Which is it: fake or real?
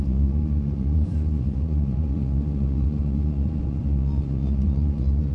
fake